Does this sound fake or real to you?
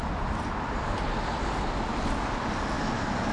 real